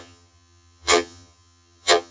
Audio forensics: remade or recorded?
remade